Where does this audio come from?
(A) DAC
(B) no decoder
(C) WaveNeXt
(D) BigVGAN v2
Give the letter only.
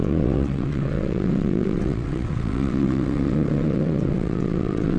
C